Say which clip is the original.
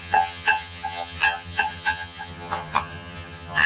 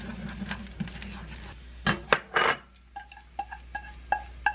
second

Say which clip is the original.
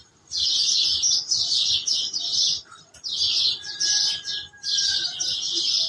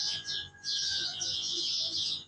first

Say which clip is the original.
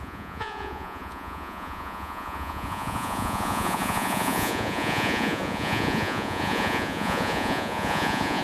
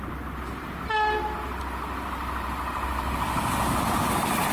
second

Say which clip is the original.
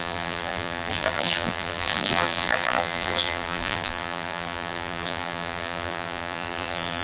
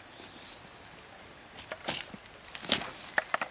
second